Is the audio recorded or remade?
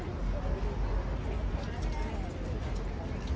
recorded